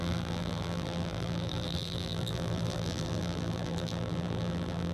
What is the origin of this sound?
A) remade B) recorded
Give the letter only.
A